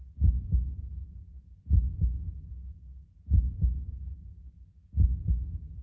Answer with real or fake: real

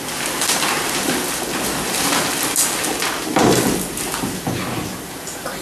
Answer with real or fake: real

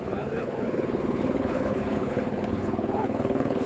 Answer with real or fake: fake